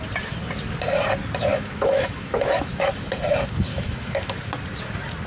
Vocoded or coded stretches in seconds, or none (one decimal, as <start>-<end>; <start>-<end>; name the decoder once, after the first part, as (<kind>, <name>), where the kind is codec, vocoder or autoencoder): 1.5-2.9 (autoencoder, DAC-VAE); 3.7-4.3

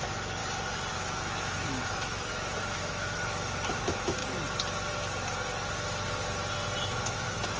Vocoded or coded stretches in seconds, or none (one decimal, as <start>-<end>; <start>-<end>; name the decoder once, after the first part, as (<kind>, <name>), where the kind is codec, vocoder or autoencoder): 0.0-0.4 (autoencoder, DAC-VAE); 0.9-4.2; 6.8-7.6

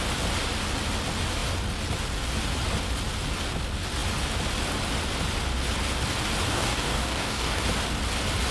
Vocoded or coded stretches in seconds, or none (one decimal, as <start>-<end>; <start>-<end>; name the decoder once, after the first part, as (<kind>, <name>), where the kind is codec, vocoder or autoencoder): 6.5-7.6 (codec, DAC)

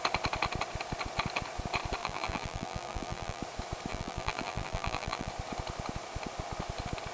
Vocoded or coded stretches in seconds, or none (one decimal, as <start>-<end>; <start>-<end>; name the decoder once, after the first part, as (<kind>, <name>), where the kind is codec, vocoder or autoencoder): 2.0-3.4 (vocoder, BigVGAN v2); 3.9-5.3

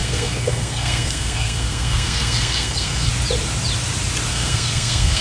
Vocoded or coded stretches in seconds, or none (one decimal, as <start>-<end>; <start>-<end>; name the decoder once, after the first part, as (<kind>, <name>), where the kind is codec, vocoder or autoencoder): 0.0-3.1 (codec, SNAC); 4.3-5.2

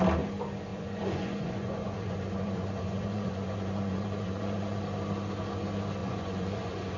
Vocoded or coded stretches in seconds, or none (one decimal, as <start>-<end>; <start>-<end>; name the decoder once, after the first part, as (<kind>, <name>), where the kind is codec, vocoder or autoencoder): 0.7-4.8 (vocoder, Vocos); 6.0-7.0

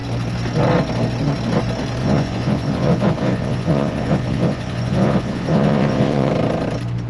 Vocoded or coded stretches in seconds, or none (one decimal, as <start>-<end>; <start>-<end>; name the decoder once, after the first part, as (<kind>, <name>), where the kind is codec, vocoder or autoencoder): 2.0-6.3 (vocoder, Vocos)

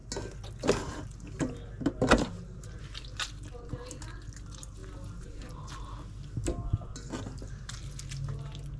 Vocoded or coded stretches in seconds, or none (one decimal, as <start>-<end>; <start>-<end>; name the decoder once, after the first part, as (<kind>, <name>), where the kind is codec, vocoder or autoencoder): none